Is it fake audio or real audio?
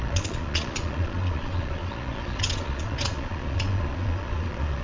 fake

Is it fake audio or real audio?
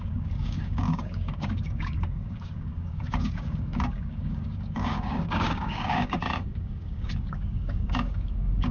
fake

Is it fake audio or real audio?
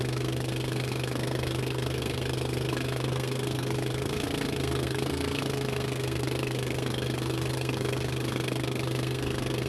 fake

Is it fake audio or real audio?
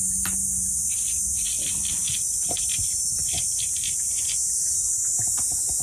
real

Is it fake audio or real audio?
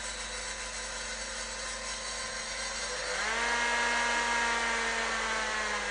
real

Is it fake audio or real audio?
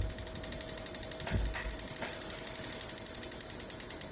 fake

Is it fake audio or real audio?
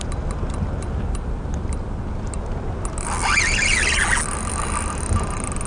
real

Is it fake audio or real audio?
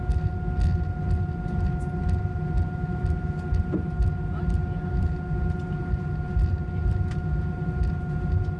real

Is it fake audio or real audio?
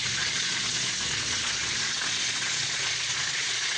fake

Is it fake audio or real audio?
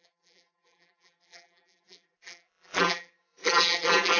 fake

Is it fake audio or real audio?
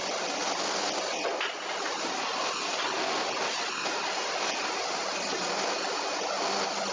real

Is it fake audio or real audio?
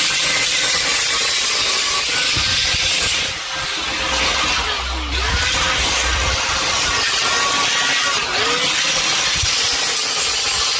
real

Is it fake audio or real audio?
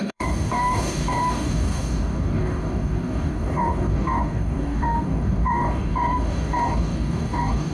fake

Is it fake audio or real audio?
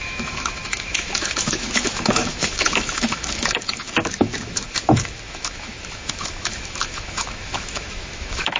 fake